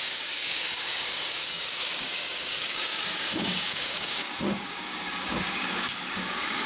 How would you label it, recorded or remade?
remade